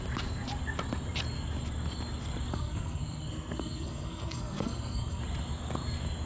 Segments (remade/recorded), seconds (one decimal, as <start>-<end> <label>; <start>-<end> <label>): 0.0-2.5 recorded; 2.5-5.2 remade; 5.2-6.3 recorded